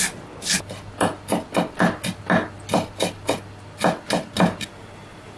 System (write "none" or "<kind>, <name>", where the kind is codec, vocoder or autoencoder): none